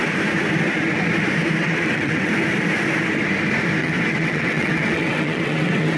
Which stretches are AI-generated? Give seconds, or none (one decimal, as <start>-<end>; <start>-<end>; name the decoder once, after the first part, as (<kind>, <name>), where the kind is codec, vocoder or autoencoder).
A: 1.6-2.3 (vocoder, WaveNeXt); 3.8-6.0